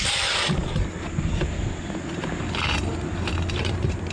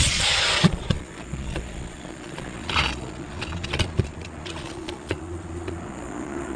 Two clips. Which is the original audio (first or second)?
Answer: first